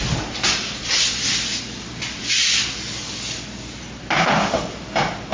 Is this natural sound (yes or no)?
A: yes